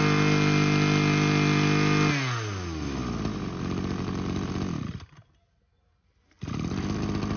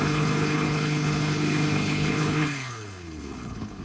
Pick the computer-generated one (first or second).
second